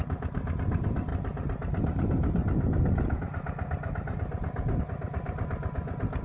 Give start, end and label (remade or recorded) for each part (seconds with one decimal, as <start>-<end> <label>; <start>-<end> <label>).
0.0-6.2 recorded